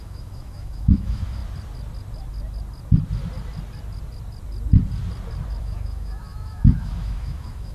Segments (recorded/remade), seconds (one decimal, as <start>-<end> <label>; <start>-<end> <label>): 0.0-1.4 remade; 1.4-5.6 recorded; 5.6-7.7 remade